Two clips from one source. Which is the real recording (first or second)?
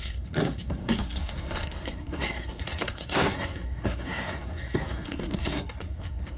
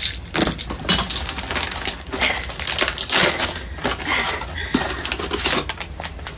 second